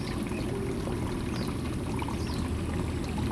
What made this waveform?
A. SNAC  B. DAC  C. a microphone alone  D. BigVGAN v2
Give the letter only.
C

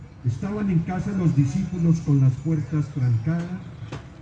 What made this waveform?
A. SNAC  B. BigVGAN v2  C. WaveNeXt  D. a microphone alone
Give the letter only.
D